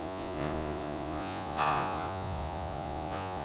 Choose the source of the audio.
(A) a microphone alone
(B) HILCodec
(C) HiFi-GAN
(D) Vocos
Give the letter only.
D